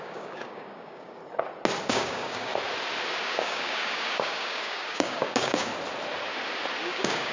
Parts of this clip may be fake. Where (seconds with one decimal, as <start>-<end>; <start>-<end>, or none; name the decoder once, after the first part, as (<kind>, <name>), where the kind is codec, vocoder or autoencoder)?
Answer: 0.0-1.2 (codec, DAC); 1.9-2.5; 3.1-5.7; 6.8-7.3